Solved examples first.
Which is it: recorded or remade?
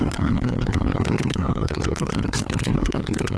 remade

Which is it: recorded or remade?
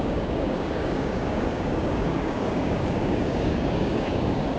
remade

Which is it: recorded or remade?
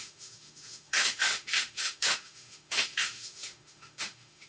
remade